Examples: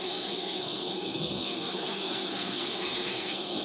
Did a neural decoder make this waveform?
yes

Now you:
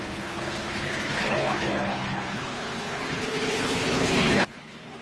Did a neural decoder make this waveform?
yes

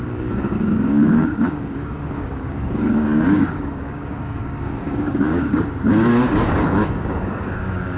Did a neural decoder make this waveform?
yes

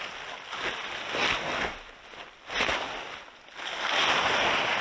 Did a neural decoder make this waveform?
no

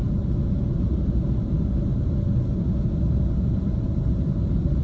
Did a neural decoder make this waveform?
no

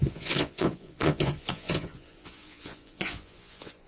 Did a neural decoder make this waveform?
yes